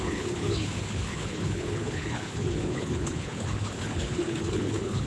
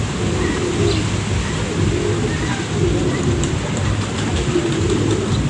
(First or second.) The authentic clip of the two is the second